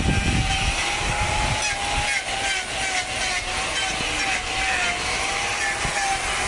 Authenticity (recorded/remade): recorded